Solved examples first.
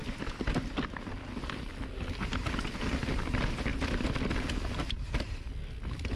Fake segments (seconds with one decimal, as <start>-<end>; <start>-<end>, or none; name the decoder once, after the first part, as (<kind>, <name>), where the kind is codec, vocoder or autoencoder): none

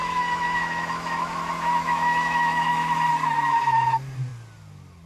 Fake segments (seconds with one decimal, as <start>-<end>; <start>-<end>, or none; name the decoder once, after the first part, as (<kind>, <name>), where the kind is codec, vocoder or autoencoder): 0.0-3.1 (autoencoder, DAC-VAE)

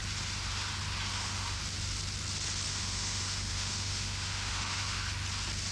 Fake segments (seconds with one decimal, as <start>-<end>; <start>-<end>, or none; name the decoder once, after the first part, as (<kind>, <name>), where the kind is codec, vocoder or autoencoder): 1.1-1.6 (autoencoder, DAC-VAE); 2.7-5.0

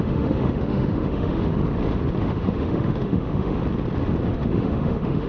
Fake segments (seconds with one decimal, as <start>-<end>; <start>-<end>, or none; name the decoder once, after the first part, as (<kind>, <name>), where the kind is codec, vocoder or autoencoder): 0.0-1.5 (autoencoder, DAC-VAE); 2.2-3.6; 4.3-5.3

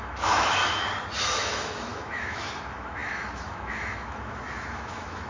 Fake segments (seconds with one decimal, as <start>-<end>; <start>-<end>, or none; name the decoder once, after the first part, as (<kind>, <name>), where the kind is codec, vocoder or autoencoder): 0.0-0.6 (autoencoder, DAC-VAE); 1.2-5.3

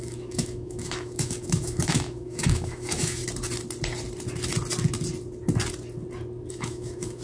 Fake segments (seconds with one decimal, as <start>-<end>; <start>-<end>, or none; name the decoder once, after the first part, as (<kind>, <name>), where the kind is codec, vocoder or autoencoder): 0.0-3.2 (autoencoder, DAC-VAE); 6.5-7.2

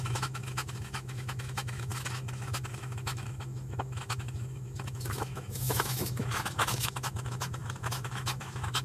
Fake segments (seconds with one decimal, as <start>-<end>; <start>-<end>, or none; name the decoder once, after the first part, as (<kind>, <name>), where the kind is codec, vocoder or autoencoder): 0.0-8.8 (autoencoder, DAC-VAE)